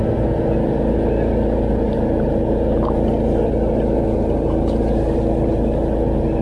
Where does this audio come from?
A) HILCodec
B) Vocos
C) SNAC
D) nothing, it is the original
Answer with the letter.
D